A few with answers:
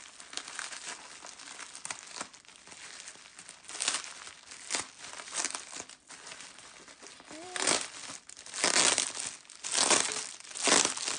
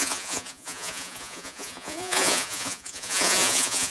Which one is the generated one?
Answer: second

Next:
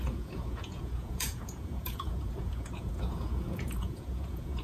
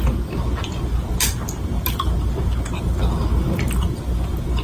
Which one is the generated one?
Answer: first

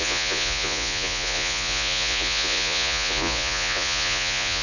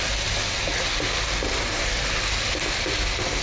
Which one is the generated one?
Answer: first